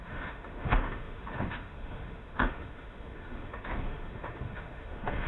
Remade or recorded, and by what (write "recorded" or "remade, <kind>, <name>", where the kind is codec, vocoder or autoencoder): remade, autoencoder, DAC-VAE